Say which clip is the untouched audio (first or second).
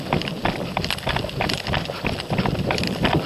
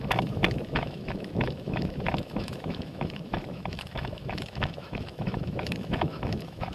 first